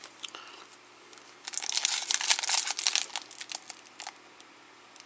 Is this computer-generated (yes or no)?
no